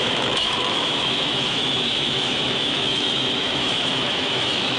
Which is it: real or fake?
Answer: fake